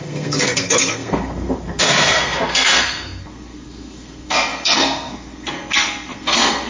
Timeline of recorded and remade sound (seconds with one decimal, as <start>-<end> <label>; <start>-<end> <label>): 0.0-6.7 remade